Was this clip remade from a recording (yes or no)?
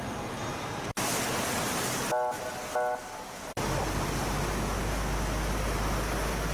no